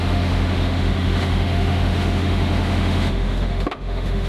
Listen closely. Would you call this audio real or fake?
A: fake